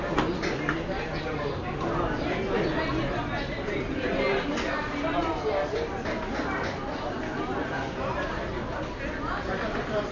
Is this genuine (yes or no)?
yes